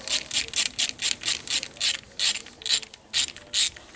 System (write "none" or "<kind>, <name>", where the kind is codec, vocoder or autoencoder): none